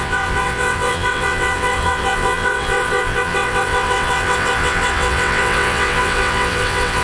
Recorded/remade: remade